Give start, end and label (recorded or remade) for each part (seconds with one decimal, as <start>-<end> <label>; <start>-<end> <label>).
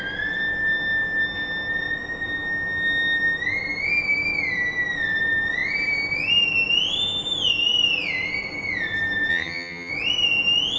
0.0-9.3 recorded; 9.3-9.9 remade; 9.9-10.8 recorded